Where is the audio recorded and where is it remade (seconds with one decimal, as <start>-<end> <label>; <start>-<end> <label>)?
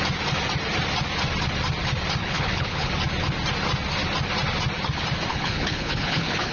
0.0-2.2 recorded; 2.2-2.9 remade; 2.9-5.3 recorded; 5.3-6.5 remade